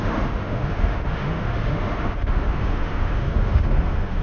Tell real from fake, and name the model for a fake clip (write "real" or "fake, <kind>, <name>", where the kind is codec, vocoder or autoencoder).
fake, autoencoder, DAC-VAE